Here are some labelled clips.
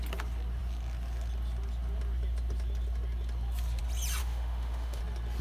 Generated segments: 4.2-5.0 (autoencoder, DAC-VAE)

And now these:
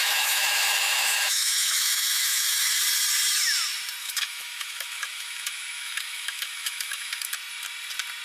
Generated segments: 0.0-2.8 (autoencoder, DAC-VAE); 4.0-7.3

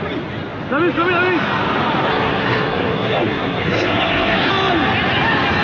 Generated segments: 2.1-4.5 (codec, SNAC)

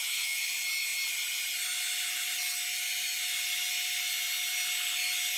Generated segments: 0.0-0.5 (autoencoder, DAC-VAE)

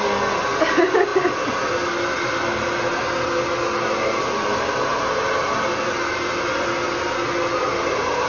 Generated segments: none

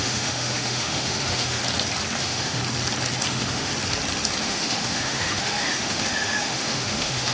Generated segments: 0.0-1.6 (autoencoder, DAC-VAE); 2.2-2.6; 3.3-3.7; 4.4-7.3

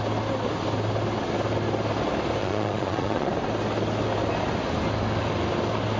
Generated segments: 2.4-3.3 (vocoder, Vocos)

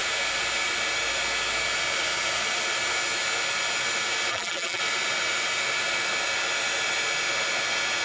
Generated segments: 4.3-4.8 (vocoder, BigVGAN v2)